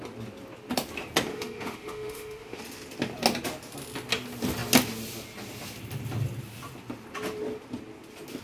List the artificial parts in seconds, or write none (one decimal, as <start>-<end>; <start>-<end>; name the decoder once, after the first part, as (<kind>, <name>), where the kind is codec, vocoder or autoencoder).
1.3-2.6 (autoencoder, DAC-VAE)